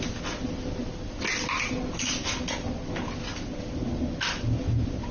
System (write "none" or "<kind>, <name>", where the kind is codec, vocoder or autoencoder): none